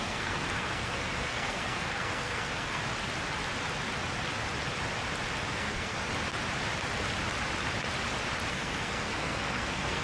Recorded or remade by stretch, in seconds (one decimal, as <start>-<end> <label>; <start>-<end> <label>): 0.0-2.8 remade; 2.8-5.5 recorded; 5.5-6.1 remade; 6.1-8.5 recorded; 8.5-10.0 remade